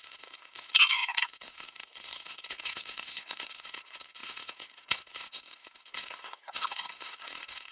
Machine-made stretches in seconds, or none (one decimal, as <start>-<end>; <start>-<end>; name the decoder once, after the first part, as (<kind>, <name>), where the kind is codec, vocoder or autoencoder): 0.0-7.7 (codec, SNAC)

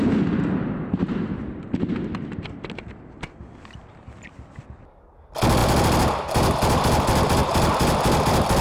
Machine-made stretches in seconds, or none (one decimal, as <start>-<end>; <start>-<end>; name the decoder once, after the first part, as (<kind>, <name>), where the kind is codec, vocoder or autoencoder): none